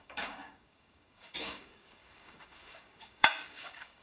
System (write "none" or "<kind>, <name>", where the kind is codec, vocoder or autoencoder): codec, DAC